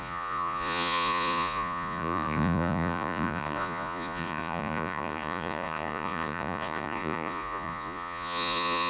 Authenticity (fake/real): fake